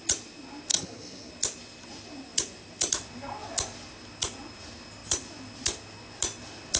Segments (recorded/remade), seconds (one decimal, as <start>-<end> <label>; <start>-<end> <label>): 0.0-0.7 recorded; 0.7-1.3 remade; 1.3-6.8 recorded